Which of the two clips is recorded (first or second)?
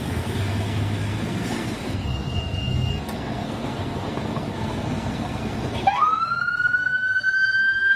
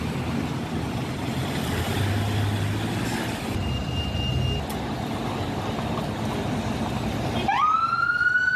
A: second